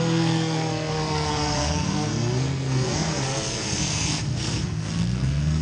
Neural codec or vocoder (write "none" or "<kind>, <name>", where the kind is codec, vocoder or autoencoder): codec, SNAC